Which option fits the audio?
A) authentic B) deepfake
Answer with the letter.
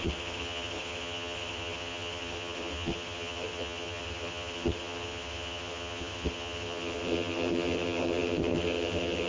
B